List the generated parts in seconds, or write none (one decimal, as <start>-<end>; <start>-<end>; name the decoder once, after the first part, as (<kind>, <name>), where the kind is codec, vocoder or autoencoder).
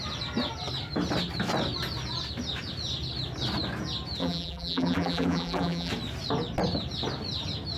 4.2-5.9 (vocoder, BigVGAN v2)